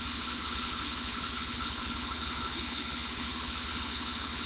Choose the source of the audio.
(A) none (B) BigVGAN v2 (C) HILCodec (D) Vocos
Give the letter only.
C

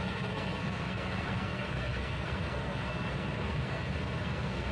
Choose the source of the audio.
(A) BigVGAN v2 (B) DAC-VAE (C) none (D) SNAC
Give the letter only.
D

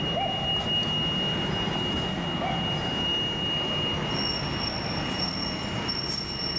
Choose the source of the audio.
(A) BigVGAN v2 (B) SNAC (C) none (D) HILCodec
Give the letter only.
C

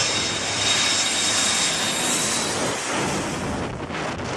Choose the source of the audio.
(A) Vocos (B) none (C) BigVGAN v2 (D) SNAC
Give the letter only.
B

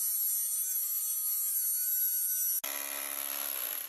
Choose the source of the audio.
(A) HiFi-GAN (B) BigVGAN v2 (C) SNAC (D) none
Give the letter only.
D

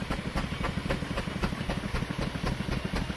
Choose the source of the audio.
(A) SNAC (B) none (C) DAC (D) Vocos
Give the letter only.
B